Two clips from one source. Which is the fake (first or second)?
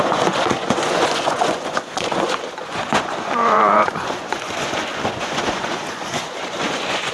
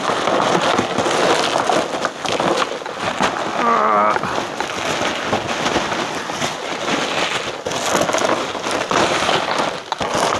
first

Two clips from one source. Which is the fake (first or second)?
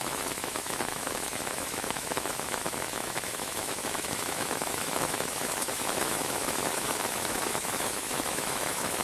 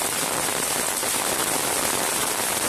first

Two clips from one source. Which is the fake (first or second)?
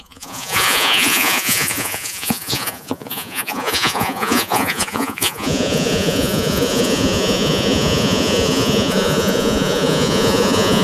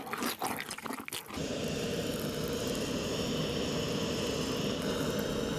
first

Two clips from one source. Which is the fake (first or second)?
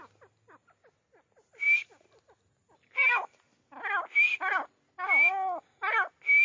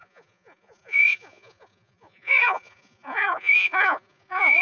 second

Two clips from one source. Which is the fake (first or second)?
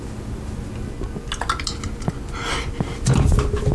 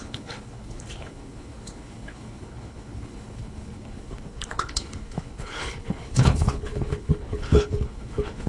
second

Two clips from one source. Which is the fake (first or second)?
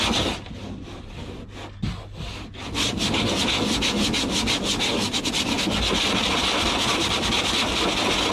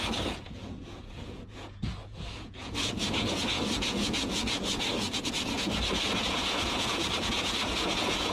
second